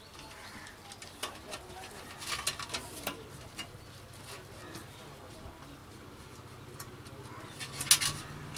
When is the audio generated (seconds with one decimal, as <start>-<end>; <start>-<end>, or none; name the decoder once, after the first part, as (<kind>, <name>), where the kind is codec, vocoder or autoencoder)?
none